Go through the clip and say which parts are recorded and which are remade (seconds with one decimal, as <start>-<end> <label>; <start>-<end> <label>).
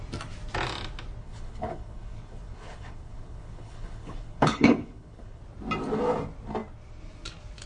0.0-1.2 recorded; 1.2-5.4 remade; 5.4-7.7 recorded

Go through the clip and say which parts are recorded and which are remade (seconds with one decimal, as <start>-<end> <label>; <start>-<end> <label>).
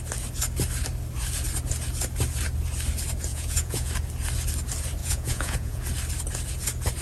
0.0-3.3 recorded; 3.3-3.9 remade; 3.9-5.0 recorded; 5.0-5.8 remade; 5.8-7.0 recorded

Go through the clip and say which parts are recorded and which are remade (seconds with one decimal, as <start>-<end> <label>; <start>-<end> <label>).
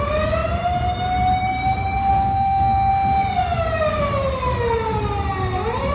0.0-2.1 recorded; 2.1-2.9 remade; 2.9-5.9 recorded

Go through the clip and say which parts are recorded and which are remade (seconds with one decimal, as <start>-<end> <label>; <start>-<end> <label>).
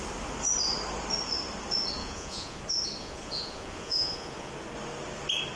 0.0-2.0 recorded; 2.0-2.6 remade; 2.6-3.0 recorded; 3.0-4.5 remade; 4.5-5.6 recorded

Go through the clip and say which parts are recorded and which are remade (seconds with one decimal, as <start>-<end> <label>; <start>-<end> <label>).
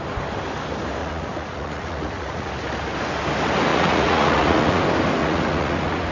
0.0-1.0 recorded; 1.0-2.5 remade; 2.5-3.7 recorded; 3.7-4.8 remade; 4.8-5.2 recorded; 5.2-6.1 remade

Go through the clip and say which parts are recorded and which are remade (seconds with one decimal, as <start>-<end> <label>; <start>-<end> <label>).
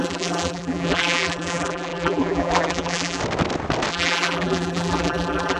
0.0-3.2 remade; 3.2-3.9 recorded; 3.9-5.6 remade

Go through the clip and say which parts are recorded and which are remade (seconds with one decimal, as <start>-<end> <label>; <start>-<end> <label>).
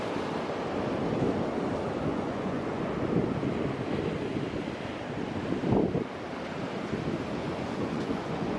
0.0-2.1 recorded; 2.1-2.8 remade; 2.8-7.4 recorded; 7.4-8.6 remade